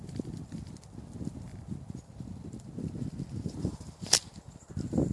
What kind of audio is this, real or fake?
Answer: real